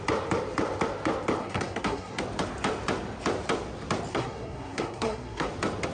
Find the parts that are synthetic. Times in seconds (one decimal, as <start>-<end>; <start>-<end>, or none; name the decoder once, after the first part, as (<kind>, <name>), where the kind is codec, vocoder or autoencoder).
1.4-2.2 (codec, SNAC); 4.1-5.5